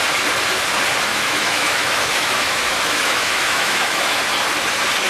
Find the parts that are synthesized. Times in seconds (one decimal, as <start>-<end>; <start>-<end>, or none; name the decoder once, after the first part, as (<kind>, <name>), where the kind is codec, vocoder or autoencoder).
1.1-4.2 (autoencoder, DAC-VAE)